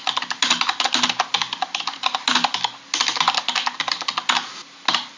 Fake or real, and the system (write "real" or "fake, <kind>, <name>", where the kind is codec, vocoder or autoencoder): real